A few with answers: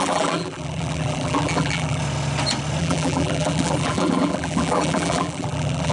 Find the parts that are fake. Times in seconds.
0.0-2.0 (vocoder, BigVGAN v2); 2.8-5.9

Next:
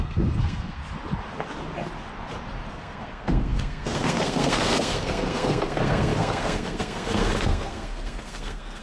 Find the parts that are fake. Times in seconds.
0.0-0.8 (codec, SNAC); 2.7-8.8

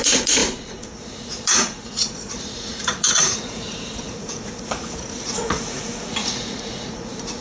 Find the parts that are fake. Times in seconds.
0.0-7.4 (vocoder, Vocos)

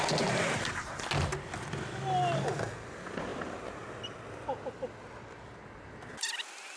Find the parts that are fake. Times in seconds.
none

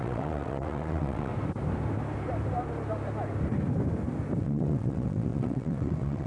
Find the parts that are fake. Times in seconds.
0.0-1.3 (vocoder, WaveNeXt); 4.4-6.3

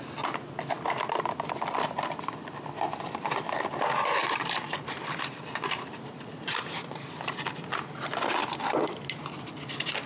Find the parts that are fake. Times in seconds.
4.2-7.4 (vocoder, BigVGAN v2)

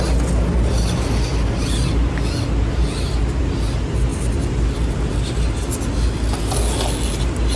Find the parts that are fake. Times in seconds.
none